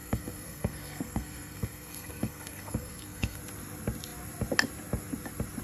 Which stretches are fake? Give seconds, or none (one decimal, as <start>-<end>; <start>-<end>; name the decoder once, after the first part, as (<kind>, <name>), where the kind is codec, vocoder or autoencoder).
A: 0.0-3.4 (codec, SNAC)